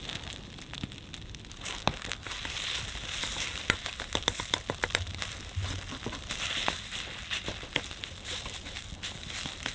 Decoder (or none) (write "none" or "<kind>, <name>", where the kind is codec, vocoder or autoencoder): none